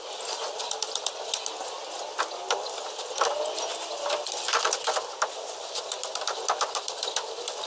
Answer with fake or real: fake